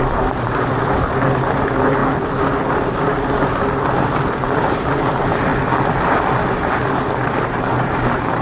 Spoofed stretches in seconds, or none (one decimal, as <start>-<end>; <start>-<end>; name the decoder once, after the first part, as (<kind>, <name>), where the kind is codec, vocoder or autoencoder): 0.0-2.0 (vocoder, BigVGAN v2); 2.7-5.5; 7.4-8.4